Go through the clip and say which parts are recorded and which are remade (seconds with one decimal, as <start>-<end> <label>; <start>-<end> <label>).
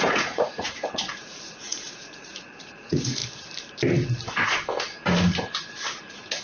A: 0.0-3.2 remade; 3.2-6.0 recorded; 6.0-6.4 remade